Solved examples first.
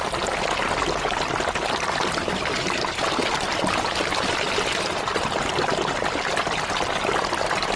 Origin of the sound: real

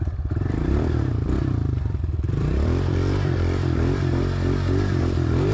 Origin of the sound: fake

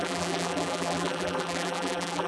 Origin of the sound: fake